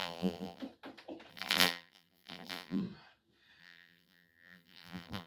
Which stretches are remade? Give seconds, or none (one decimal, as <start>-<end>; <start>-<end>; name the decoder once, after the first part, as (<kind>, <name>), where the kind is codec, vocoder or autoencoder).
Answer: 0.0-0.6 (vocoder, BigVGAN v2); 1.3-2.8; 3.6-5.3